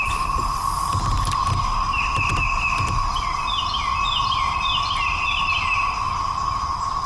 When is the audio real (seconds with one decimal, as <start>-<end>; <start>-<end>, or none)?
0.0-7.1